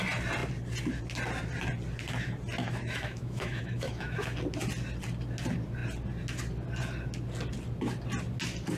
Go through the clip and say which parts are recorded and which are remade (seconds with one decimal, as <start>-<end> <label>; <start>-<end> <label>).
0.0-2.6 recorded; 2.6-4.4 remade; 4.4-8.8 recorded